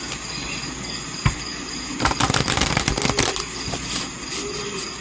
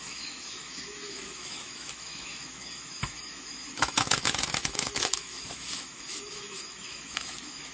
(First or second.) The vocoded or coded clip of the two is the second